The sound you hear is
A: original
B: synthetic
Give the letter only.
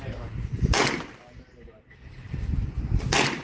A